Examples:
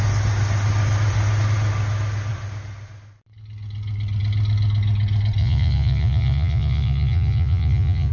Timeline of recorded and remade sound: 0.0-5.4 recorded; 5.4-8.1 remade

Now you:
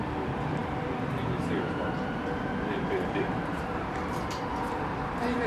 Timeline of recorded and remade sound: 0.0-5.5 remade

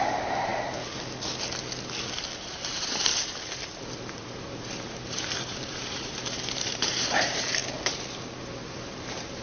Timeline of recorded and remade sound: 0.0-0.5 remade; 0.5-2.4 recorded; 2.4-3.1 remade; 3.1-3.8 recorded; 3.8-7.6 remade; 7.6-8.4 recorded; 8.4-9.4 remade

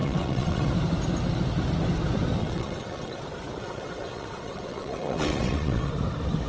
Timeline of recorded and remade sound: 0.0-0.7 remade; 0.7-2.4 recorded; 2.4-3.2 remade; 3.2-3.6 recorded; 3.6-5.9 remade; 5.9-6.5 recorded

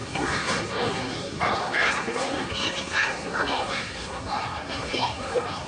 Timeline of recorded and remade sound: 0.0-5.7 remade

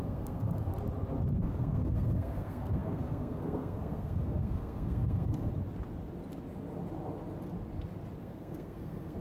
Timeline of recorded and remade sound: 0.0-0.7 remade; 0.7-1.3 recorded; 1.3-5.5 remade; 5.5-8.2 recorded; 8.2-9.2 remade